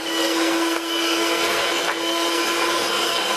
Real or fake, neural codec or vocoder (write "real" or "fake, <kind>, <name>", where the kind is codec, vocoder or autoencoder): fake, codec, SNAC